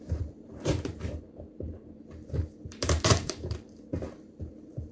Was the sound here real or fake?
fake